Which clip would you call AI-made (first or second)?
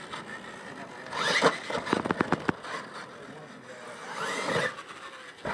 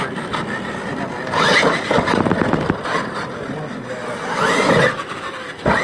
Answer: second